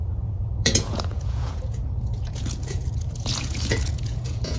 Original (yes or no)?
no